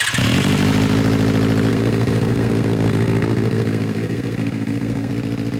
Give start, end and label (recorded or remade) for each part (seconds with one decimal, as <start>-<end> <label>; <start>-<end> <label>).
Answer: 0.0-1.7 recorded; 1.7-5.1 remade; 5.1-5.6 recorded